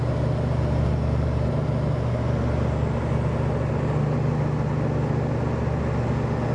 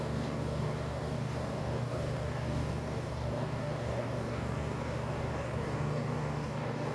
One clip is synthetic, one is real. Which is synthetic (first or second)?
second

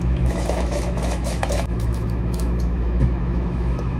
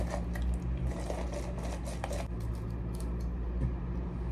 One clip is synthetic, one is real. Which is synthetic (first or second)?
first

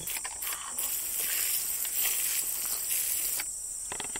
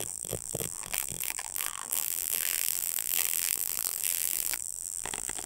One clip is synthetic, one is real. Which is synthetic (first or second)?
second